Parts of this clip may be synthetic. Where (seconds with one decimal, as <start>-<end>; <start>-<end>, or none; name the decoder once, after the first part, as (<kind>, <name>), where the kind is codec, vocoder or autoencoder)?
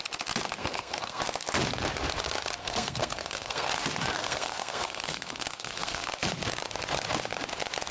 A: 0.6-1.2 (codec, SNAC); 2.6-3.7; 4.2-6.1